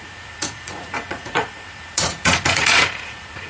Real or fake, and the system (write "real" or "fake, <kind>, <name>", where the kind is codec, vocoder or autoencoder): fake, vocoder, Vocos